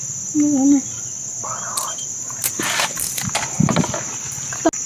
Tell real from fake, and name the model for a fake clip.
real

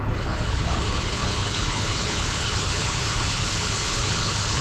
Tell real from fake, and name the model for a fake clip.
fake, codec, HILCodec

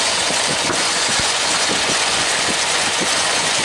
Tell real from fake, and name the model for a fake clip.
fake, vocoder, Vocos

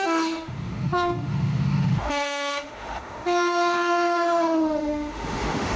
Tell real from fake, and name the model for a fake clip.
fake, autoencoder, DAC-VAE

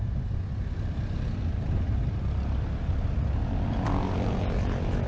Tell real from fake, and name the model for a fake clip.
real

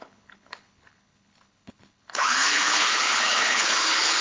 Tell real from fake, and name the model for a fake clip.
fake, codec, HILCodec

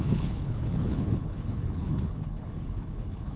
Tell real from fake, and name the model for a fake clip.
fake, codec, HILCodec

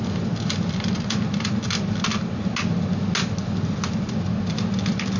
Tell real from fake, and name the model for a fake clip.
real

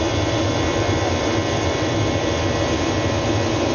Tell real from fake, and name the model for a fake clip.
fake, vocoder, BigVGAN v2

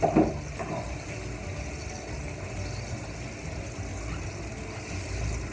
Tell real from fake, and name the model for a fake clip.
real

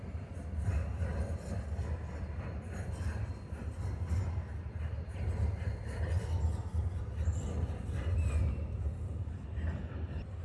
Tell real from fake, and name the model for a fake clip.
real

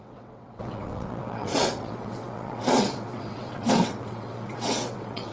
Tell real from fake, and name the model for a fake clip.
fake, vocoder, WaveNeXt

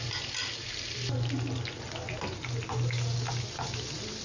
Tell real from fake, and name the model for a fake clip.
real